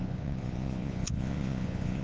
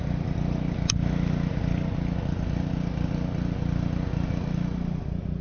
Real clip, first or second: second